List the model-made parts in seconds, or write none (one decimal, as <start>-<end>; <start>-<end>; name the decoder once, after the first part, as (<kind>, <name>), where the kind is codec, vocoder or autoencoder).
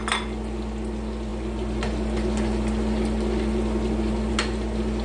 none